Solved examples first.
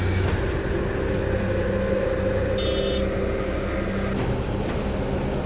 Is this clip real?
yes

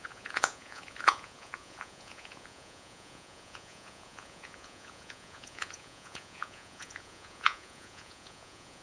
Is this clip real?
no